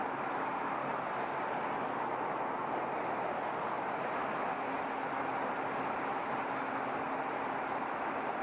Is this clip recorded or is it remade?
recorded